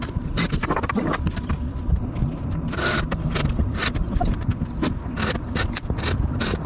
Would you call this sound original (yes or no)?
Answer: yes